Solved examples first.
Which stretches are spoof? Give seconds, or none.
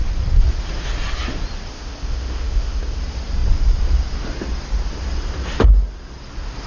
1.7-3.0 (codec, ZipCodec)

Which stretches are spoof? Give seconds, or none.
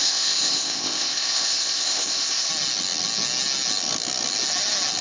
0.0-2.5 (codec, ZipCodec)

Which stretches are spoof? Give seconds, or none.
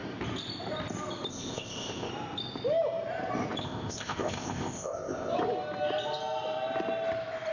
1.3-2.1 (codec, ZipCodec); 3.6-5.3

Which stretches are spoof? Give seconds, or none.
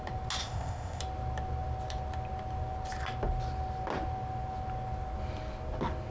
0.4-1.0 (codec, ZipCodec)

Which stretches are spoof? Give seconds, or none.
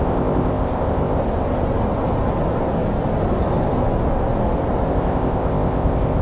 0.0-1.2 (codec, ZipCodec); 4.9-6.2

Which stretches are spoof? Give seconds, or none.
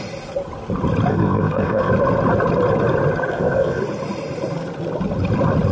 1.1-1.9 (codec, ZipCodec); 3.3-3.8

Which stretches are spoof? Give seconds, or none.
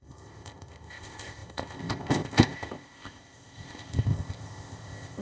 0.0-5.2 (codec, ZipCodec)